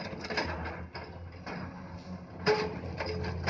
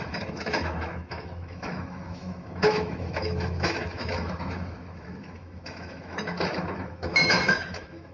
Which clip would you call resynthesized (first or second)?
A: second